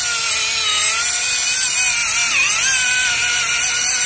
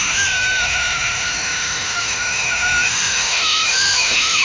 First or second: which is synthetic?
second